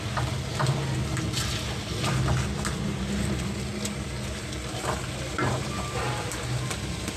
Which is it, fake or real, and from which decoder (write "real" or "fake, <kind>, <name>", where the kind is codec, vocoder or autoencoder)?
real